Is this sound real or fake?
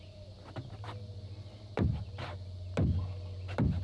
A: real